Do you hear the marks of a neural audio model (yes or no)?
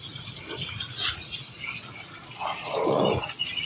yes